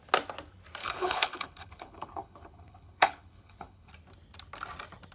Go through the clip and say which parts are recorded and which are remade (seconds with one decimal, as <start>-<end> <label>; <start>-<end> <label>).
0.0-0.8 recorded; 0.8-3.9 remade; 3.9-5.1 recorded